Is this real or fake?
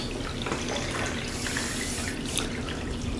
real